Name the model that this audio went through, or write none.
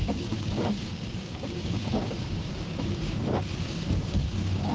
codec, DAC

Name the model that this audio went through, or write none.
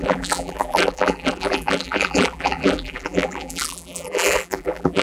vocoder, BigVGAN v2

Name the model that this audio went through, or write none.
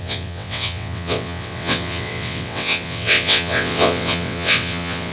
vocoder, WaveNeXt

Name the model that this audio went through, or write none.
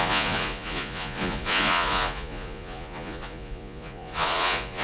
vocoder, Vocos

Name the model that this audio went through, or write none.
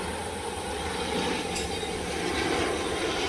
none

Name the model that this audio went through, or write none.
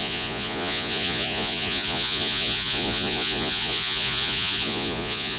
vocoder, Vocos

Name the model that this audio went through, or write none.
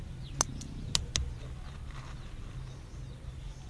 none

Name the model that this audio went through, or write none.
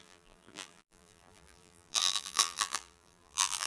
vocoder, BigVGAN v2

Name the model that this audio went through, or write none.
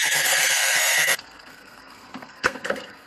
codec, SNAC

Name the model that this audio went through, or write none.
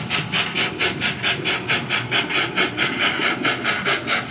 none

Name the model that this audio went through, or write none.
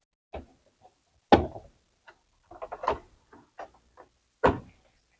none